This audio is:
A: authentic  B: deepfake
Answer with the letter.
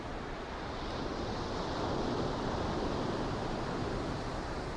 A